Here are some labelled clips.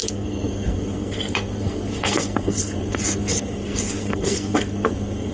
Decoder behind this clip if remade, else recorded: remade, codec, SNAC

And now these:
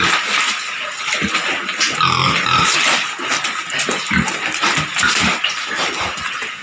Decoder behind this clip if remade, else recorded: recorded